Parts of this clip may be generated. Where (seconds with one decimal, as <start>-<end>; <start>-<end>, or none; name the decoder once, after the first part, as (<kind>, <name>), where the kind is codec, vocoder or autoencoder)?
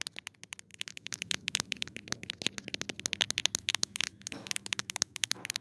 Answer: 0.7-2.3 (autoencoder, DAC-VAE); 3.6-5.6